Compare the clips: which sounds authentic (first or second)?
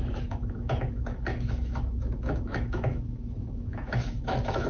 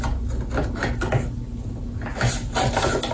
second